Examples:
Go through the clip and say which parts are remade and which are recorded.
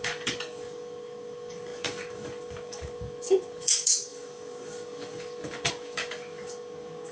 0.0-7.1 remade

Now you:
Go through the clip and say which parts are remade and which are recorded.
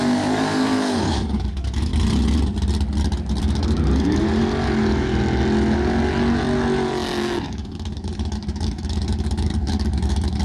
0.0-1.9 remade; 1.9-3.4 recorded; 3.4-4.4 remade; 4.4-7.2 recorded; 7.2-10.4 remade